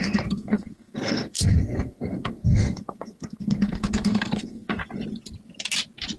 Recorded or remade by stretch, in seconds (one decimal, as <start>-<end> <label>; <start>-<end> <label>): 0.0-4.8 remade; 4.8-6.2 recorded